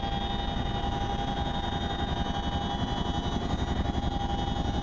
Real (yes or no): yes